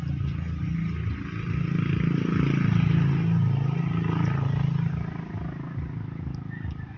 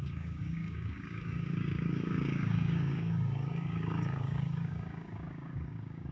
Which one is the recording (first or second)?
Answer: first